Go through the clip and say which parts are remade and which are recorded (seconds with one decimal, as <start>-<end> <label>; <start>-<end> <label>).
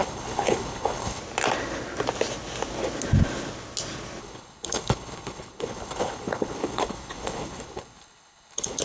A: 0.0-1.2 remade; 1.2-4.2 recorded; 4.2-8.8 remade